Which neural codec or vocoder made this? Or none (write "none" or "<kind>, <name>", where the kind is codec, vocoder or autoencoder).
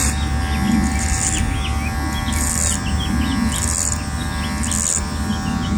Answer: none